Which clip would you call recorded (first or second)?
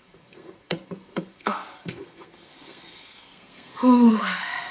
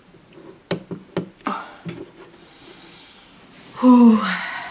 second